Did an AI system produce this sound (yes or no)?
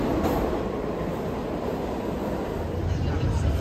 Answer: no